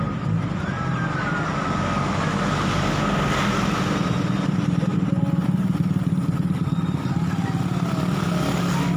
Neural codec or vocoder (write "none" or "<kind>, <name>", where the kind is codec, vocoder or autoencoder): none